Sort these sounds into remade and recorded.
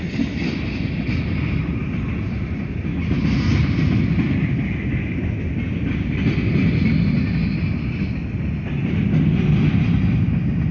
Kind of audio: recorded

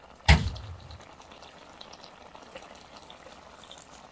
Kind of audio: recorded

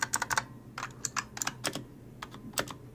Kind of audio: recorded